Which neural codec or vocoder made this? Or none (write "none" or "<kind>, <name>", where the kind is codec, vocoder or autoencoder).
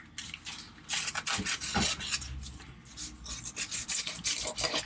none